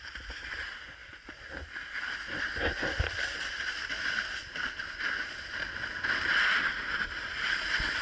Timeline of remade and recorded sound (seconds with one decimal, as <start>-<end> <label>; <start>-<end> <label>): 0.0-8.0 recorded